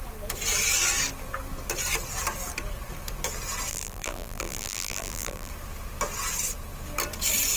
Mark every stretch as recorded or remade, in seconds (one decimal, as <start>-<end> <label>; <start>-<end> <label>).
0.0-3.7 recorded; 3.7-5.5 remade; 5.5-7.6 recorded